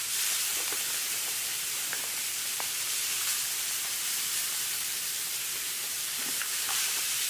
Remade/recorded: remade